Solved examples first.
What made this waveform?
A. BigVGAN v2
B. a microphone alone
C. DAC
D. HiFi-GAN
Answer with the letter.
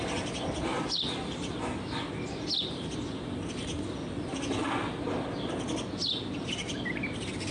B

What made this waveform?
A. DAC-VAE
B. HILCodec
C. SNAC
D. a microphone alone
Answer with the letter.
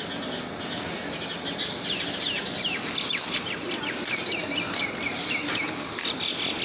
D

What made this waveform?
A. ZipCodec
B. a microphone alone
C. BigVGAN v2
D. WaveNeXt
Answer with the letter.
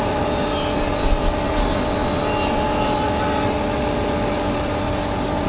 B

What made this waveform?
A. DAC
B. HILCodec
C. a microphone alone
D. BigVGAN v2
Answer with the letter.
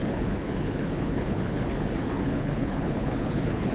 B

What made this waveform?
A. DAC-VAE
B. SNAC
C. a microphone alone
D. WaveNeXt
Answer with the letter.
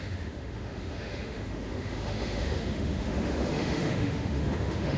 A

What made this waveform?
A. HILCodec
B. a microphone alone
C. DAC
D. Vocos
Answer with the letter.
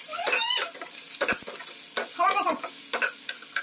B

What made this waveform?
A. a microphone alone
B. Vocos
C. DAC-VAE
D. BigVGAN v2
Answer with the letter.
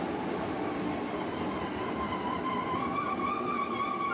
A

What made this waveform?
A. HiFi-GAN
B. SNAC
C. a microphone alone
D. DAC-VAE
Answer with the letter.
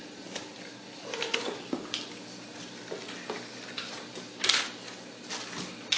C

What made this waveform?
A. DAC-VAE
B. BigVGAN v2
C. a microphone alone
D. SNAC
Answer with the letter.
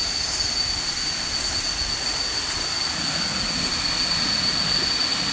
C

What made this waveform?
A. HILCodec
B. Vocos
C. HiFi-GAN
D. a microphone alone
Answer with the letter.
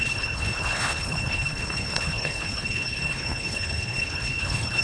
A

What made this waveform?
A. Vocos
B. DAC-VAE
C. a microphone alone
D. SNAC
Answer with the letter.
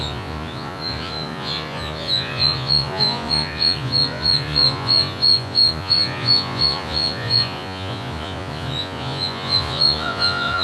A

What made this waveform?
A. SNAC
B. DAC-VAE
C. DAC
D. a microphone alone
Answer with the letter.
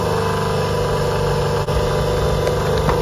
D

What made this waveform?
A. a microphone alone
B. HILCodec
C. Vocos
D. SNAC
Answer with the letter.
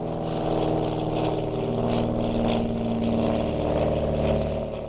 A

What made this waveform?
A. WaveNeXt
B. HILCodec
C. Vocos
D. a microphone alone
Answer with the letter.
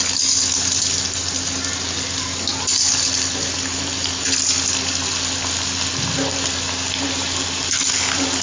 D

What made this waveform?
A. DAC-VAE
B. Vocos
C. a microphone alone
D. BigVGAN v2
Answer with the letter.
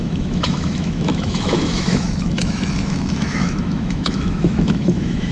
A